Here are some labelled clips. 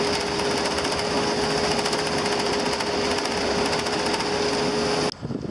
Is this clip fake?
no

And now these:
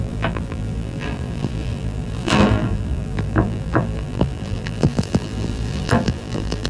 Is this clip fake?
yes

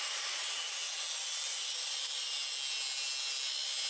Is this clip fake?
no